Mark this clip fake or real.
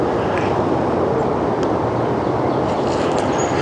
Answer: real